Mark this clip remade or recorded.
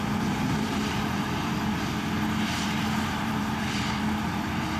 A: remade